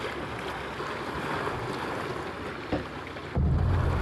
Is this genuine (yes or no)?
yes